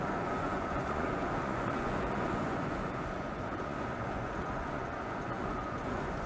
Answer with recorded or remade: remade